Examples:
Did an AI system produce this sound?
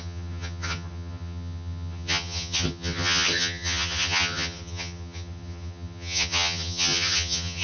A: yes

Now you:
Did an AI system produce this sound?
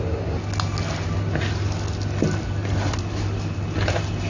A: no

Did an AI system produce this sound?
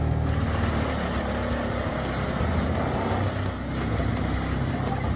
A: no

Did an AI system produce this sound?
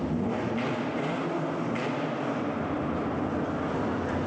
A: no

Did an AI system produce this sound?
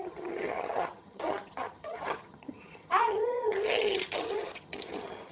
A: yes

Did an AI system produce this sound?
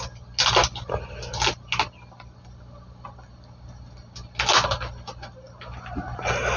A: no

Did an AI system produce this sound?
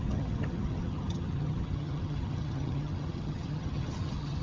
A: yes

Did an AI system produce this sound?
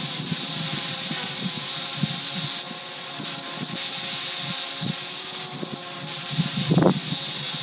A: no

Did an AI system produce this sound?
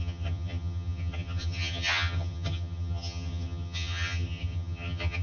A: yes